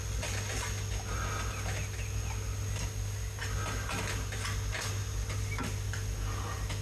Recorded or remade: recorded